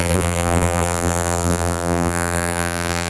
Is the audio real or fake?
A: fake